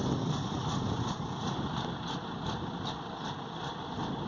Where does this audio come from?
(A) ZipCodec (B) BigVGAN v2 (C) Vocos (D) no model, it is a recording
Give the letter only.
D